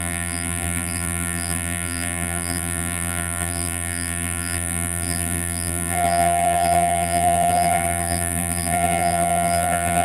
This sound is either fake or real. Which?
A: fake